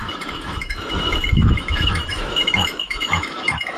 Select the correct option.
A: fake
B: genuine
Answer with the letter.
A